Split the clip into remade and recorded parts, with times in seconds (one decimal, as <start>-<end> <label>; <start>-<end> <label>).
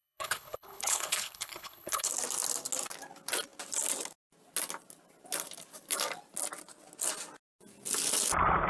0.0-2.1 remade; 2.1-8.7 recorded